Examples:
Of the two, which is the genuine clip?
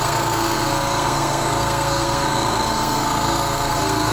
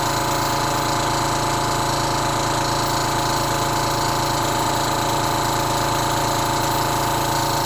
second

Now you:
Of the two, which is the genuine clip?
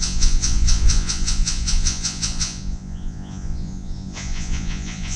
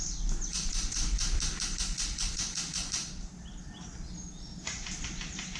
second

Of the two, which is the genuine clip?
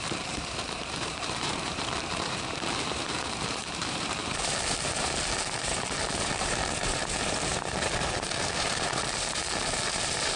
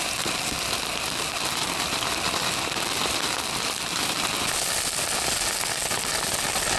second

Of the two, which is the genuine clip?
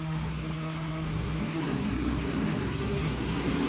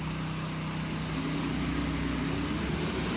second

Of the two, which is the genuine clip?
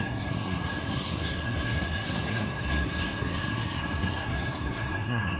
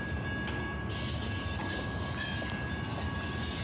second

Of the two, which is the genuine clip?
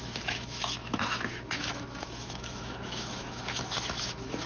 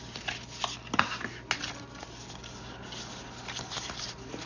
second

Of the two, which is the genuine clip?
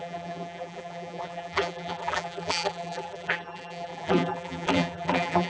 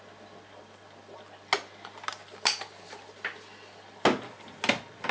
second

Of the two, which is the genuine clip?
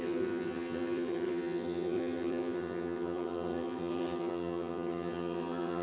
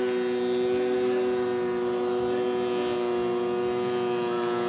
second